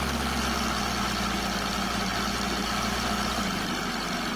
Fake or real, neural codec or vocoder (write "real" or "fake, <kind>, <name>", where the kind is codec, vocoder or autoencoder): real